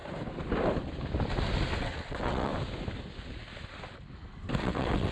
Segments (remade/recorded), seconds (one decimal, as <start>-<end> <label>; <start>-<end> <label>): 0.0-1.8 recorded; 1.8-2.5 remade; 2.5-4.6 recorded; 4.6-5.1 remade